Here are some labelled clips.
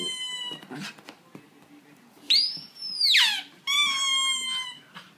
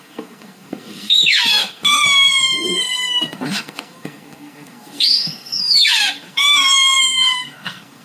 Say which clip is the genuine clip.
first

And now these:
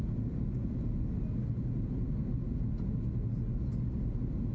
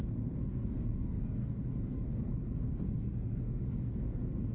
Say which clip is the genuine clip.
first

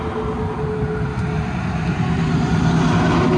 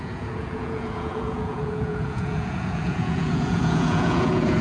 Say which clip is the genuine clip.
first